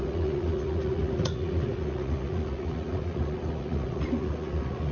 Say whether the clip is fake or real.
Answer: fake